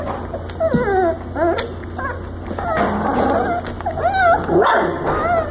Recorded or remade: recorded